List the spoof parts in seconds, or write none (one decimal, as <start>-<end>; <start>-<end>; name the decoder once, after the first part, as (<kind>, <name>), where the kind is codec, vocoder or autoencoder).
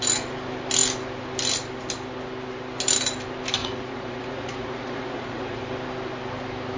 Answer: 3.6-5.6 (vocoder, Vocos)